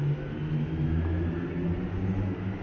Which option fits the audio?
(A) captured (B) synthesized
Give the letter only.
A